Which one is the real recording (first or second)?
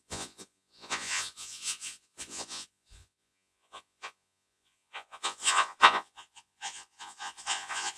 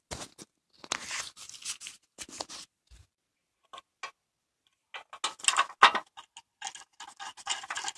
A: second